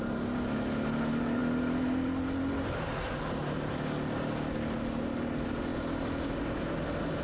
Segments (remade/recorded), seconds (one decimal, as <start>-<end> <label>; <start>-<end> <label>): 0.0-7.2 recorded